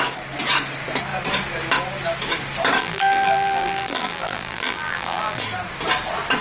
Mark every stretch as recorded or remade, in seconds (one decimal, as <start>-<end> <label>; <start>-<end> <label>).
0.0-2.8 recorded; 2.8-5.4 remade; 5.4-6.4 recorded